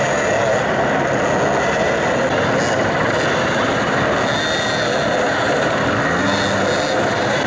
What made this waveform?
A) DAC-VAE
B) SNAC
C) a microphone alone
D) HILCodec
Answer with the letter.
C